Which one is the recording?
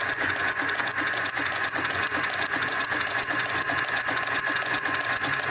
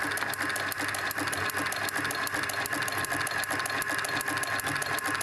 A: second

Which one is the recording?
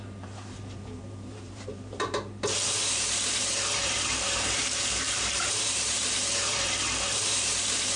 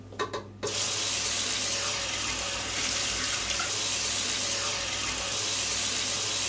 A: second